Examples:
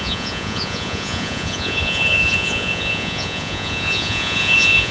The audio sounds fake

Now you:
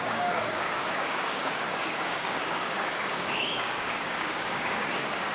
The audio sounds fake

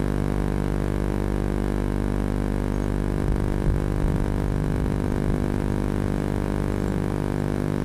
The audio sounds real